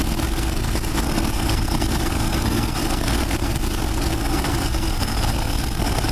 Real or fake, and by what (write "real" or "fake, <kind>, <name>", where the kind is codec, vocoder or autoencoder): fake, codec, SNAC